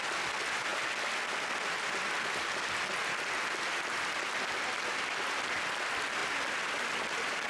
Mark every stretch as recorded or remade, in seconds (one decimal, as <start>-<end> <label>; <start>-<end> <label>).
0.0-7.5 recorded